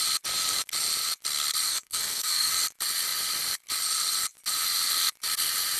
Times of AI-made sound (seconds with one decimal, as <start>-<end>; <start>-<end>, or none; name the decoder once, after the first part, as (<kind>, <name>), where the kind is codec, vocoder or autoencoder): 1.7-2.5 (codec, SNAC)

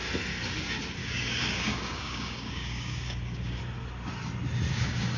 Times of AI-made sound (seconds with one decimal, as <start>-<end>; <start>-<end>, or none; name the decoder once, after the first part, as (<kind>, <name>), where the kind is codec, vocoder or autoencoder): 1.0-3.6 (codec, DAC); 4.7-5.2

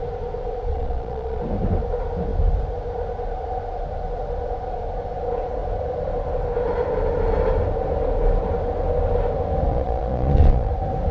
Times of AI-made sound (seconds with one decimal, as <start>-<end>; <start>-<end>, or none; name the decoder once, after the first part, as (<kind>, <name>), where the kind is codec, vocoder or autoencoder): 0.7-1.4 (vocoder, Vocos); 9.7-10.7

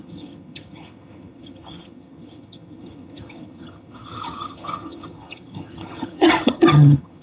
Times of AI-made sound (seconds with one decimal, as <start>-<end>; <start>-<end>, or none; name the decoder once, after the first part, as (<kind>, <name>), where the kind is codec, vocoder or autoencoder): 0.0-7.2 (vocoder, HiFi-GAN)

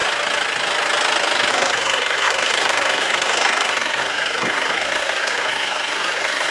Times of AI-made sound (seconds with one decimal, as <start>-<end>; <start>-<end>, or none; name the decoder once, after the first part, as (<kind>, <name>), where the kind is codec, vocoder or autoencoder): 1.5-6.5 (codec, SNAC)

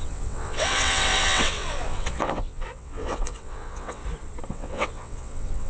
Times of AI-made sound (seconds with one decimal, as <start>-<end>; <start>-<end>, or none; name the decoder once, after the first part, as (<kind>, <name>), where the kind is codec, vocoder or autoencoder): 0.0-4.0 (vocoder, WaveNeXt); 4.5-5.7

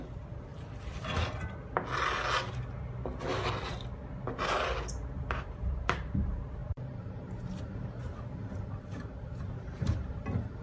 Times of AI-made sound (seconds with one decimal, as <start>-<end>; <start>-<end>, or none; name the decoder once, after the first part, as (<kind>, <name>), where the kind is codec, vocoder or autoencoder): 0.0-0.5 (vocoder, BigVGAN v2); 5.4-10.6